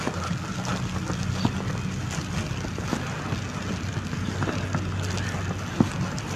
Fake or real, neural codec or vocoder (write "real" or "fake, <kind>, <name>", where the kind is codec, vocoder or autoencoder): real